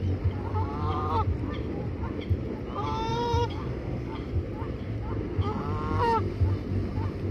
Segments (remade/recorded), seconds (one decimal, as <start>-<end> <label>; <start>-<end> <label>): 0.0-0.5 recorded; 0.5-1.1 remade; 1.1-3.1 recorded; 3.1-4.3 remade; 4.3-7.3 recorded